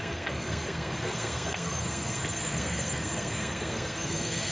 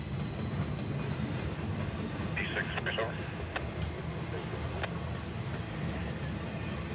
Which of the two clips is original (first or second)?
second